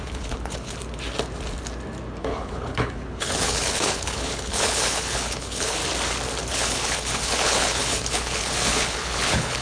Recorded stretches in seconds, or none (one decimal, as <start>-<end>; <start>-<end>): 0.8-2.2; 5.8-6.5